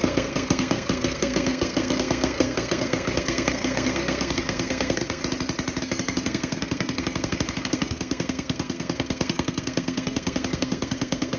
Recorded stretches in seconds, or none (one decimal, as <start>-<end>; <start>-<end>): 5.2-5.8